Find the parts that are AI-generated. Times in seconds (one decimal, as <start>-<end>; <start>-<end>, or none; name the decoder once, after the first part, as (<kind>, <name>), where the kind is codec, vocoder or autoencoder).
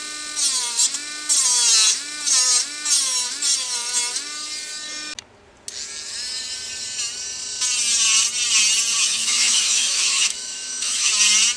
9.0-11.1 (autoencoder, DAC-VAE)